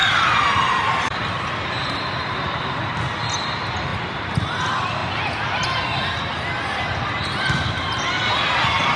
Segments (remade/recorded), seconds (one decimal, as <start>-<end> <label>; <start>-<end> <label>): 0.0-1.2 remade; 1.2-1.8 recorded; 1.8-2.8 remade; 2.8-3.9 recorded; 3.9-4.6 remade; 4.6-9.0 recorded